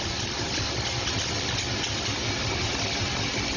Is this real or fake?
real